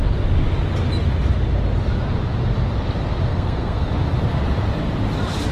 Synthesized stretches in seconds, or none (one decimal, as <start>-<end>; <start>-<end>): 3.3-3.9